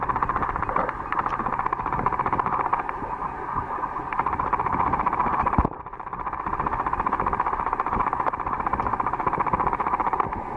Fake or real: real